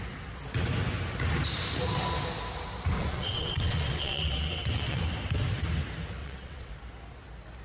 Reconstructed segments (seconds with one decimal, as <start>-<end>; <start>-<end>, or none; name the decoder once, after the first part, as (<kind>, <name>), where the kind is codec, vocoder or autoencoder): 3.0-5.0 (vocoder, WaveNeXt); 6.2-6.7